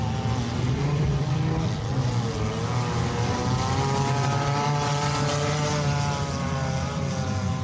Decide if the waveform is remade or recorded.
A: recorded